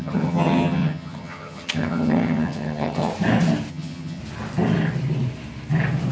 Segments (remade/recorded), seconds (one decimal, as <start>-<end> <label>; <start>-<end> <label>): 0.0-3.1 remade; 3.1-3.7 recorded; 3.7-4.2 remade; 4.2-6.1 recorded